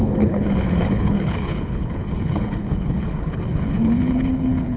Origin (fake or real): fake